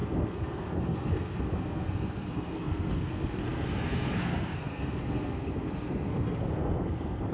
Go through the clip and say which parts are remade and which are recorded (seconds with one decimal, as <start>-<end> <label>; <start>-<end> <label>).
0.0-7.3 remade